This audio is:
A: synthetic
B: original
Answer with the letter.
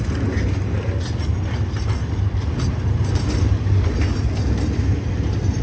B